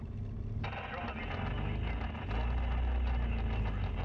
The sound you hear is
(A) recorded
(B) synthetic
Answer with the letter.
A